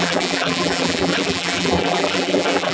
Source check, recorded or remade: remade